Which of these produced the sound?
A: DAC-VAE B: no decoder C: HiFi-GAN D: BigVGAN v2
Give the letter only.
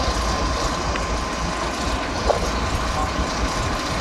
B